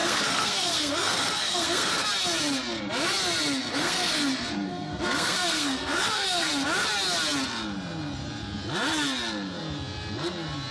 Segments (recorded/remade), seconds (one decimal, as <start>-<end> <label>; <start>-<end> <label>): 0.0-1.9 remade; 1.9-3.7 recorded; 3.7-6.5 remade; 6.5-10.7 recorded